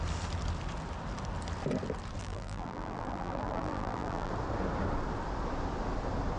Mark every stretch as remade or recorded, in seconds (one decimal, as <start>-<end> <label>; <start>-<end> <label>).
0.0-2.2 recorded; 2.2-4.3 remade; 4.3-6.4 recorded